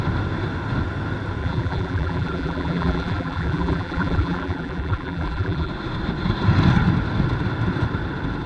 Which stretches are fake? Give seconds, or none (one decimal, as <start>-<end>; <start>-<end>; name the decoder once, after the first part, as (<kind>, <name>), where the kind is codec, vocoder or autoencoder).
1.4-5.7 (vocoder, BigVGAN v2)